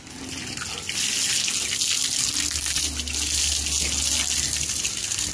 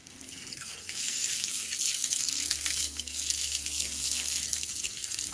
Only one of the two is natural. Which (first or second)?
first